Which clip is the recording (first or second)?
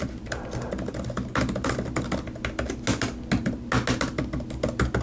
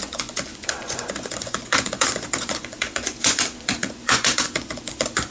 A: first